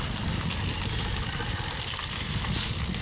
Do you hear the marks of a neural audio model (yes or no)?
no